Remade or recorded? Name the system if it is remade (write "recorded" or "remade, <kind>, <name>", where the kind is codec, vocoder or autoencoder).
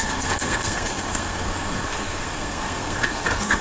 remade, codec, SNAC